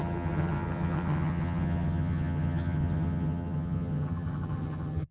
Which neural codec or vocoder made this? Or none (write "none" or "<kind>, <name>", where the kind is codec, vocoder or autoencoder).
vocoder, HiFi-GAN